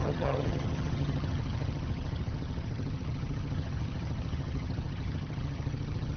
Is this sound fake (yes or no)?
yes